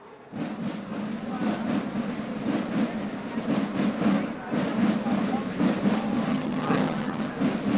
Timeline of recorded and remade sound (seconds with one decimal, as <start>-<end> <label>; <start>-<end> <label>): 0.0-6.3 recorded; 6.3-7.3 remade; 7.3-7.8 recorded